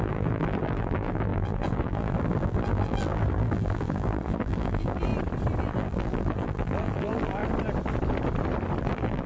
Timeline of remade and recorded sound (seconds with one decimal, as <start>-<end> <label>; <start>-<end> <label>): 0.0-5.1 remade; 5.1-5.6 recorded; 5.6-7.4 remade; 7.4-8.8 recorded; 8.8-9.3 remade